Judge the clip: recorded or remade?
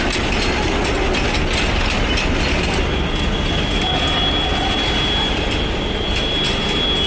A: recorded